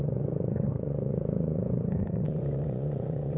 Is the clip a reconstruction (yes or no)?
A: yes